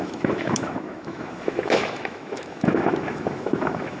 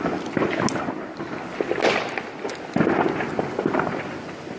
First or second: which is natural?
second